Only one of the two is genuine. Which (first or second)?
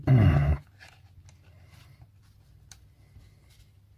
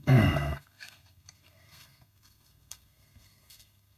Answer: first